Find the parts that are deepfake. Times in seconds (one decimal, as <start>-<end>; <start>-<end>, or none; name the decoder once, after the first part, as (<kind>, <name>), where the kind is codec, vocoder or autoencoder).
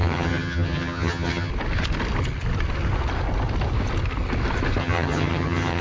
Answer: 0.0-1.5 (vocoder, HiFi-GAN); 4.8-5.8